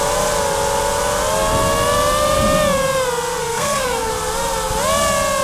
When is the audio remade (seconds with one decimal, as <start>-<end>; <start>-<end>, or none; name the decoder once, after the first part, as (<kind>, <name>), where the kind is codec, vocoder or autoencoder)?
3.4-4.1 (codec, SNAC)